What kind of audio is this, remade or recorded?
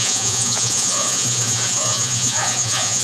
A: remade